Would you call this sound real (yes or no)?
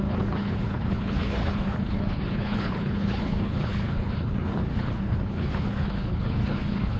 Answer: no